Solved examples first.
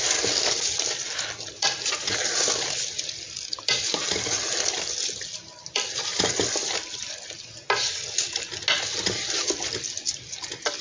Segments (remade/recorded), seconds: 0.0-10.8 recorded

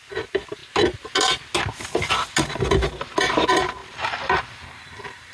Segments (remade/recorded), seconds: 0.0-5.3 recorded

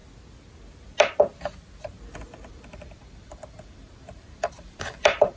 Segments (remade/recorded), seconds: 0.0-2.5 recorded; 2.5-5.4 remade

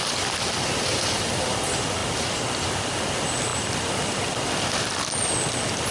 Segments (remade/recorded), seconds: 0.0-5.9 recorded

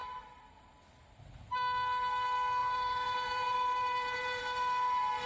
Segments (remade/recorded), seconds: 0.0-0.5 remade; 0.5-2.6 recorded; 2.6-4.4 remade; 4.4-5.3 recorded